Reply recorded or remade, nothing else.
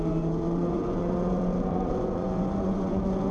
remade